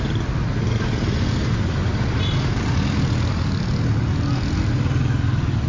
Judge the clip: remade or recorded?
recorded